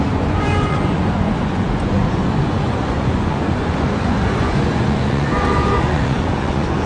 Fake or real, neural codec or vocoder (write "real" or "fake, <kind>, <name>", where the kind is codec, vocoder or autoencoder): fake, vocoder, Vocos